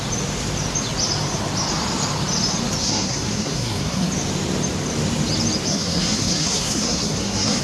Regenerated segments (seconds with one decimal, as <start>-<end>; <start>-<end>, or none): 2.8-4.1; 5.7-7.6